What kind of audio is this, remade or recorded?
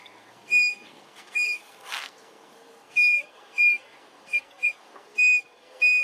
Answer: remade